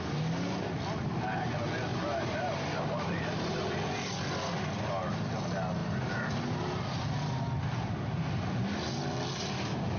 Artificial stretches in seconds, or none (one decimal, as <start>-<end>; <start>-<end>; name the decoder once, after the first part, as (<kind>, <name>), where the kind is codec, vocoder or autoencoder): 1.9-3.8 (vocoder, BigVGAN v2)